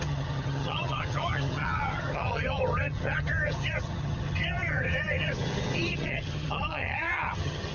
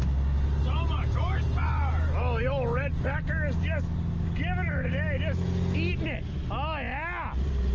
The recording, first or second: second